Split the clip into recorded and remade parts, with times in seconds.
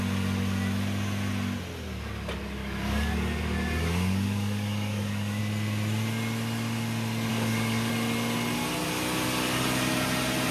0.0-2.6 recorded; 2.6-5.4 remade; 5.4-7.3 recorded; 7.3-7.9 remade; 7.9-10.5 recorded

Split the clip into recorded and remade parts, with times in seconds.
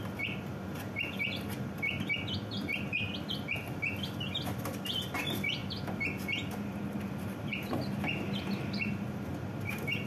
0.0-10.1 recorded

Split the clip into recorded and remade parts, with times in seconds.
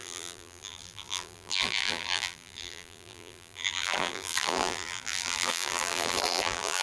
0.0-6.8 remade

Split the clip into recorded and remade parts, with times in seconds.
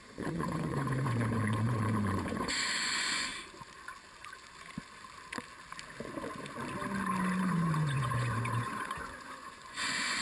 0.0-3.3 remade; 3.3-7.4 recorded; 7.4-10.2 remade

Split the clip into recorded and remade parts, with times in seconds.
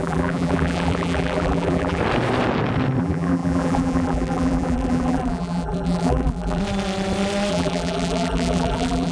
0.0-2.0 remade; 2.0-3.0 recorded; 3.0-6.6 remade; 6.6-7.5 recorded; 7.5-9.1 remade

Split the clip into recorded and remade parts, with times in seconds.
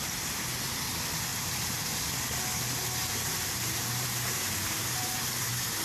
0.0-1.3 recorded; 1.3-1.9 remade; 1.9-3.0 recorded; 3.0-5.2 remade; 5.2-5.8 recorded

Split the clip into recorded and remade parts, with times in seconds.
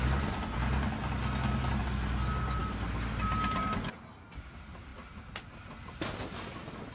0.0-6.9 recorded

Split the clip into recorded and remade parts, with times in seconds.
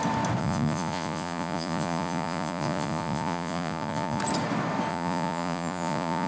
0.0-0.4 recorded; 0.4-4.2 remade; 4.2-4.9 recorded; 4.9-6.3 remade